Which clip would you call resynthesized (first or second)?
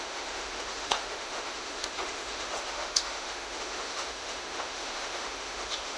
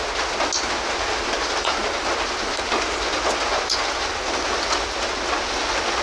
first